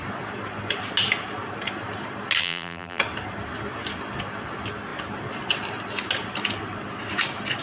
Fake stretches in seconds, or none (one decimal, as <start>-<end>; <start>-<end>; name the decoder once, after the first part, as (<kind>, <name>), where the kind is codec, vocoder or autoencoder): 2.4-3.0 (vocoder, BigVGAN v2)